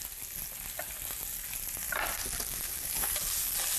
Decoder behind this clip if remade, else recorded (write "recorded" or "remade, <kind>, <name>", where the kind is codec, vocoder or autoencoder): recorded